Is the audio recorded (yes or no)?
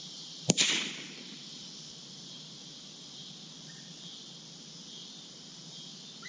no